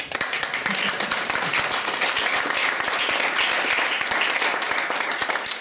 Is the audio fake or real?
real